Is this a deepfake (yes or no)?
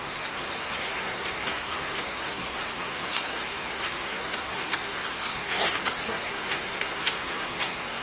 yes